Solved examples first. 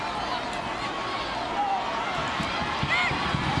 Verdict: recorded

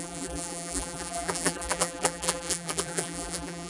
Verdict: remade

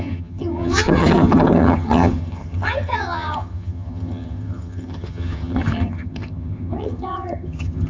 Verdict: remade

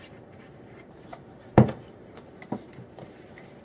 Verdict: remade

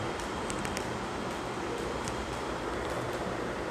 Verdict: remade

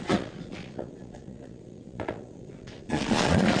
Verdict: remade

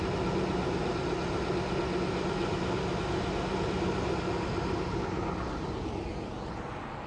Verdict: recorded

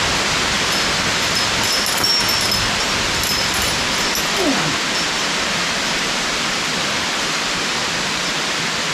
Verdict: recorded